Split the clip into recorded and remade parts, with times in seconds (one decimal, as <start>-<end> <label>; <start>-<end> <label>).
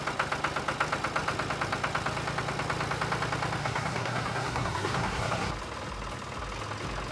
0.0-3.6 recorded; 3.6-5.5 remade; 5.5-7.1 recorded